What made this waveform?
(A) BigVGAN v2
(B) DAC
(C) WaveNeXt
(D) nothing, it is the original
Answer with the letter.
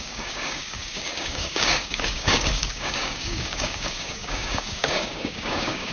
B